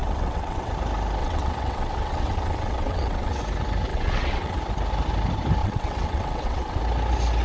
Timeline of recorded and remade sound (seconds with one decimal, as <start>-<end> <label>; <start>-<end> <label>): 0.0-0.7 remade; 0.7-1.2 recorded; 1.2-3.4 remade; 3.4-3.9 recorded; 3.9-4.6 remade; 4.6-5.6 recorded; 5.6-6.8 remade; 6.8-7.4 recorded